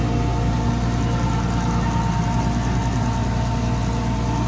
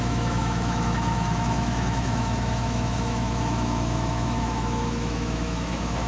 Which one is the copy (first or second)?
second